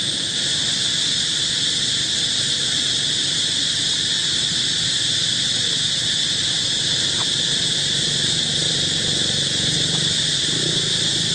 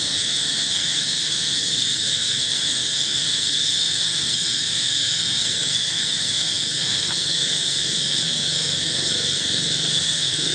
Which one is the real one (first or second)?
first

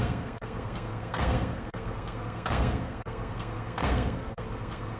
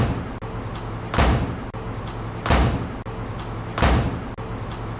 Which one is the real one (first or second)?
second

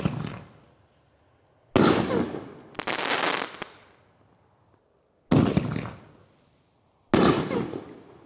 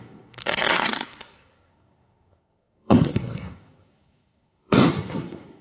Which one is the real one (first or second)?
first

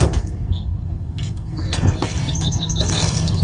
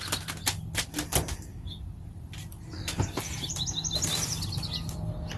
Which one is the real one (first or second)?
second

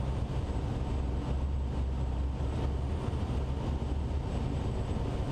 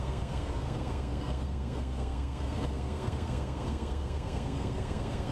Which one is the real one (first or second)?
first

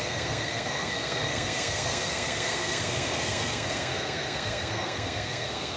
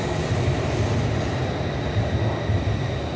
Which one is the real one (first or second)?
second